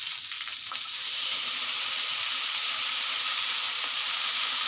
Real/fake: fake